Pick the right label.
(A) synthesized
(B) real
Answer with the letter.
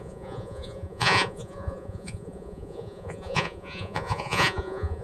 A